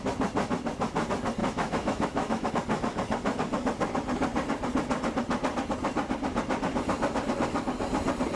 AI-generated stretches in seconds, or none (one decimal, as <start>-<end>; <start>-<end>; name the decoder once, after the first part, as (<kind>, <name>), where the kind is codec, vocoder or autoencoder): 1.4-2.5 (autoencoder, DAC-VAE)